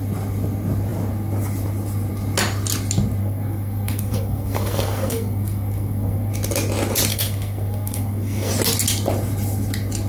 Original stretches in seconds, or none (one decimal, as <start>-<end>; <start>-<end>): 0.0-3.2; 6.3-7.1; 8.5-10.1